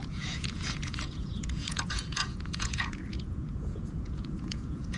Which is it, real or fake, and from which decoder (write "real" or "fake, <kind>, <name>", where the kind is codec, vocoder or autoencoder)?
fake, vocoder, Vocos